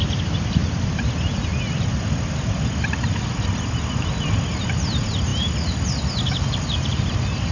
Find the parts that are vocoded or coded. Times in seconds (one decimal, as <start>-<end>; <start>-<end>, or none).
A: none